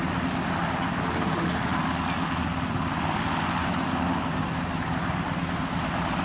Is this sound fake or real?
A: real